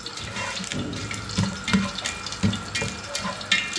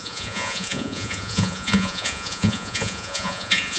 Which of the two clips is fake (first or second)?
second